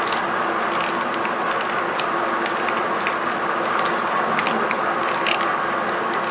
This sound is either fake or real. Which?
real